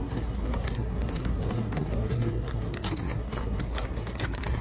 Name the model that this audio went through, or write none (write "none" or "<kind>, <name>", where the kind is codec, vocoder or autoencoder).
codec, SNAC